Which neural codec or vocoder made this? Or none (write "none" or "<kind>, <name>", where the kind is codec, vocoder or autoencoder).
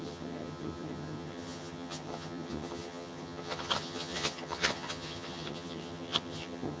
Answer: vocoder, HiFi-GAN